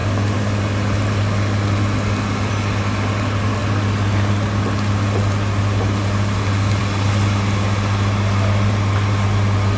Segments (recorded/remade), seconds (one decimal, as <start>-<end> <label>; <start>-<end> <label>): 0.0-9.8 recorded